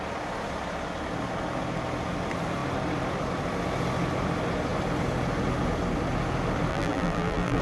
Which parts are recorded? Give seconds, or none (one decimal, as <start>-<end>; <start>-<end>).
0.0-6.7